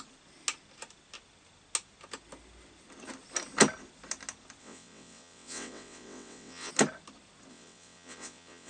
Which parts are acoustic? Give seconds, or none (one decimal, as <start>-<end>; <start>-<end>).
0.0-4.6; 6.7-7.5